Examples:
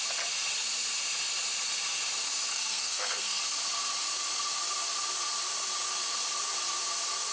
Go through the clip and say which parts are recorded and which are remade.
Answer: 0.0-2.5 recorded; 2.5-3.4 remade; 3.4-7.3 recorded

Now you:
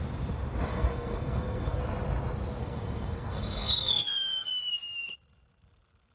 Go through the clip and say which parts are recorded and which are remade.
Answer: 0.0-0.7 recorded; 0.7-1.8 remade; 1.8-2.6 recorded; 2.6-4.5 remade; 4.5-6.1 recorded